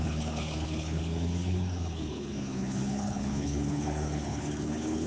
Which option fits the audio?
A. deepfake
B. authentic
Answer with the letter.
A